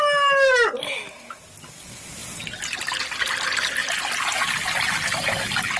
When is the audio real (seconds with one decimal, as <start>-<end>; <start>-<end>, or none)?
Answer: 0.0-5.8